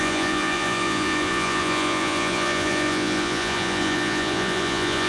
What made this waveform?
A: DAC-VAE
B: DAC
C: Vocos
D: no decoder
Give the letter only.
C